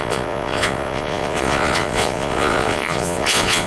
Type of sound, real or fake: fake